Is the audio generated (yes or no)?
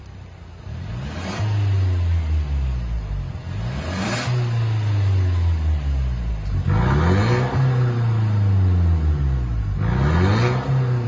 no